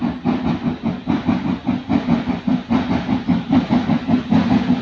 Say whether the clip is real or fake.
real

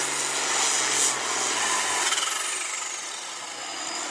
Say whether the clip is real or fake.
real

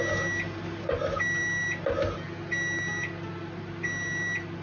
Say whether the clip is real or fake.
real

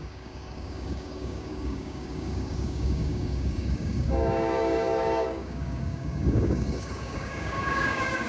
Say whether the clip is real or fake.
fake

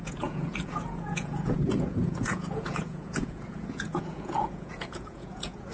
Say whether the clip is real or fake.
fake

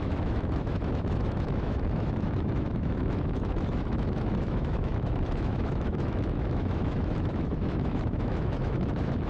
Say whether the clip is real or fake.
fake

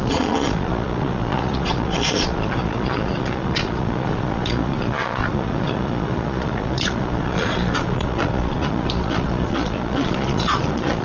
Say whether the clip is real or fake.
fake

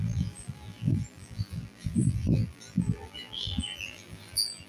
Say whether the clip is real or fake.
fake